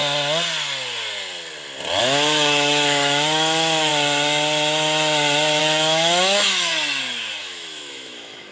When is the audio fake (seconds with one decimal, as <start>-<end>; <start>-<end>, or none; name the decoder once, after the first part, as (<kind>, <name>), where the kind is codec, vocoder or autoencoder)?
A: 2.0-3.9 (autoencoder, DAC-VAE); 5.6-6.7; 7.4-8.5